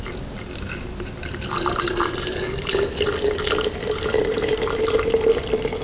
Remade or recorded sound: recorded